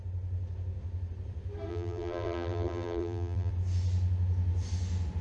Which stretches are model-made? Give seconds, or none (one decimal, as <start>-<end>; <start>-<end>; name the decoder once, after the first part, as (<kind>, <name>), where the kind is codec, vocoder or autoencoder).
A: 1.7-3.5 (vocoder, BigVGAN v2)